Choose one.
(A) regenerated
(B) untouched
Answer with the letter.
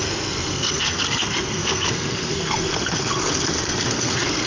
A